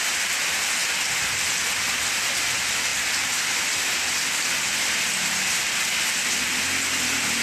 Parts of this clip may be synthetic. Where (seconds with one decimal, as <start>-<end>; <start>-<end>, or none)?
none